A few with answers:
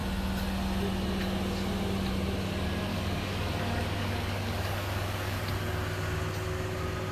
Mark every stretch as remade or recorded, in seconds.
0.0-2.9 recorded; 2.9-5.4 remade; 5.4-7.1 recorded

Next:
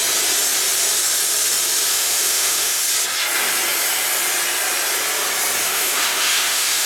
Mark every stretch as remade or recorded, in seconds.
0.0-1.9 recorded; 1.9-2.8 remade; 2.8-5.6 recorded; 5.6-6.9 remade

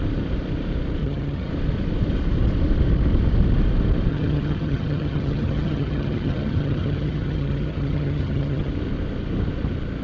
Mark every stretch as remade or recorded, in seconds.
0.0-1.0 recorded; 1.0-1.5 remade; 1.5-4.1 recorded; 4.1-8.7 remade; 8.7-10.0 recorded

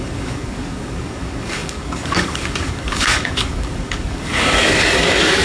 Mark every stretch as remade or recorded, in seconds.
0.0-5.4 remade